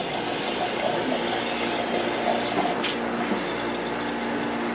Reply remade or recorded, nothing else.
recorded